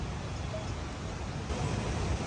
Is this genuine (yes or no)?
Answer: yes